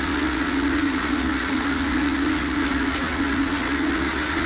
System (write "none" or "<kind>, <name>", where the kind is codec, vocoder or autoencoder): vocoder, Vocos